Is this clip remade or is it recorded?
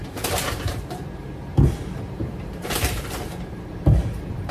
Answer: remade